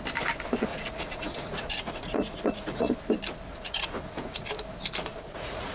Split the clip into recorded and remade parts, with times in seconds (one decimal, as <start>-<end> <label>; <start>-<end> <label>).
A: 0.0-0.7 recorded; 0.7-2.9 remade; 2.9-3.5 recorded; 3.5-4.5 remade; 4.5-5.1 recorded; 5.1-5.7 remade

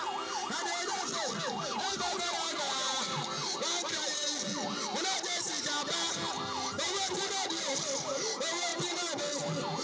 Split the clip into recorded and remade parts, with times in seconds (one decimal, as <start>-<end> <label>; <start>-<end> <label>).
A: 0.0-9.8 recorded

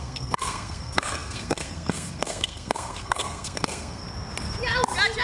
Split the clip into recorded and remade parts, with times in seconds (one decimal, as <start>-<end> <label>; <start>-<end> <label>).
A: 0.0-4.0 remade; 4.0-5.2 recorded